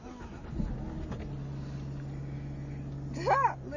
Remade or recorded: recorded